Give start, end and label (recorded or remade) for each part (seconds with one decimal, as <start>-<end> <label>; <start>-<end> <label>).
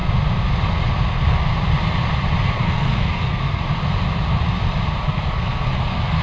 0.0-1.0 recorded; 1.0-1.5 remade; 1.5-2.5 recorded; 2.5-3.6 remade; 3.6-5.0 recorded; 5.0-6.2 remade